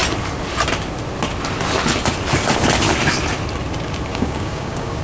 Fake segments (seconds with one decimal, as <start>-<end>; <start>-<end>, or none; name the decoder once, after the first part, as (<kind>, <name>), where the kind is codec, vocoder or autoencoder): 4.1-5.0 (codec, DAC)